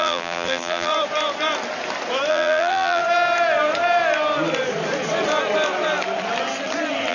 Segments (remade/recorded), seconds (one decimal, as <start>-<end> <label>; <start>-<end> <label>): 0.0-0.9 remade; 0.9-2.3 recorded; 2.3-3.0 remade; 3.0-7.1 recorded